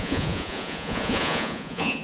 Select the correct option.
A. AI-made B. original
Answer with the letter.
A